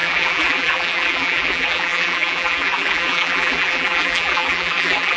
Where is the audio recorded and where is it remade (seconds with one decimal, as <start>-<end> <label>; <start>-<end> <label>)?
0.0-5.2 remade